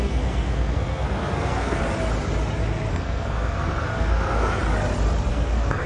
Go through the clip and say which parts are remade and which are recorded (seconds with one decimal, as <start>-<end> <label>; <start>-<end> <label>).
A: 0.0-1.8 remade; 1.8-2.9 recorded; 2.9-4.6 remade; 4.6-5.3 recorded; 5.3-5.9 remade